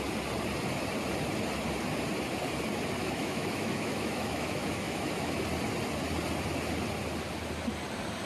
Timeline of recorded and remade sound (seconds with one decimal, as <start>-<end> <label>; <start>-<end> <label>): 0.0-3.0 recorded; 3.0-5.4 remade; 5.4-8.3 recorded